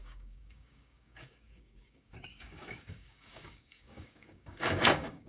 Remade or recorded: remade